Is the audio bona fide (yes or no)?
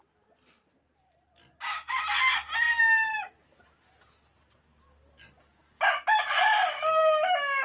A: yes